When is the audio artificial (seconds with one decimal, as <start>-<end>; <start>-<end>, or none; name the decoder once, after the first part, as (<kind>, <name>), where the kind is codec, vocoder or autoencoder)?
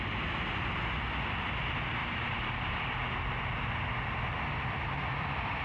2.0-5.6 (vocoder, BigVGAN v2)